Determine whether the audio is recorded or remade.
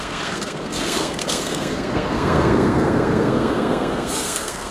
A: remade